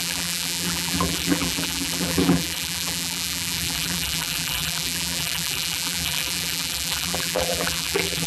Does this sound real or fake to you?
fake